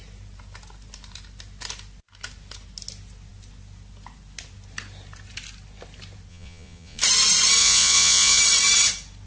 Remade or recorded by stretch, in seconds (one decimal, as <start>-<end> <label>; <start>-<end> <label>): 0.0-6.3 recorded; 6.3-7.0 remade; 7.0-7.6 recorded; 7.6-8.4 remade; 8.4-9.3 recorded